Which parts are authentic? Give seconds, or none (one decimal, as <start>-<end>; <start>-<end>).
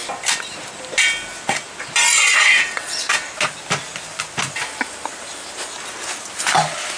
0.0-2.5; 3.1-7.0